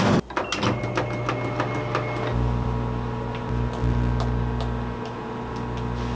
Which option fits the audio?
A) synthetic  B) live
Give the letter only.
B